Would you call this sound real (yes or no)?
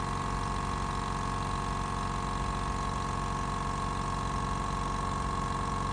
yes